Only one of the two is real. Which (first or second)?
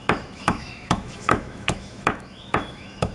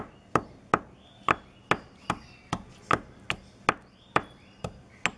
second